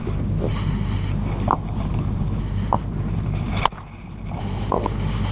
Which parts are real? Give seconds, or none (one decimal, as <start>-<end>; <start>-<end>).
0.0-0.5; 1.1-2.4; 2.8-4.4